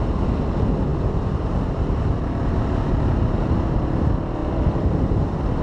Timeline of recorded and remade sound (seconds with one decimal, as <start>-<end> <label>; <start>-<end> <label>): 0.0-0.9 recorded; 0.9-1.5 remade; 1.5-4.4 recorded; 4.4-5.6 remade